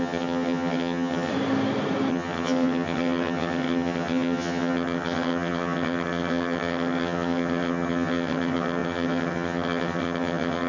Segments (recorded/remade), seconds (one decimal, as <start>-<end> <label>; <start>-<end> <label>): 0.0-1.3 remade; 1.3-2.1 recorded; 2.1-10.7 remade